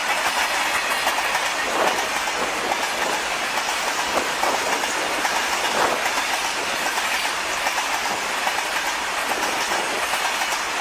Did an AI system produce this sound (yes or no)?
no